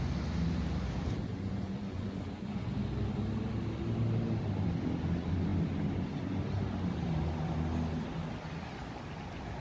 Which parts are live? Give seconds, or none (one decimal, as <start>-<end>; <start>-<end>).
0.0-1.3; 2.7-9.6